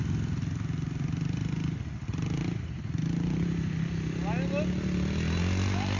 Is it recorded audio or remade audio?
recorded